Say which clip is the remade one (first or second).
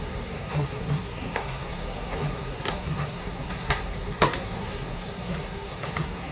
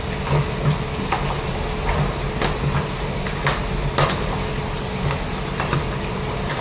first